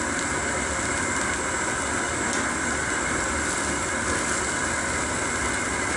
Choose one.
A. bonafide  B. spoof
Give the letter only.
A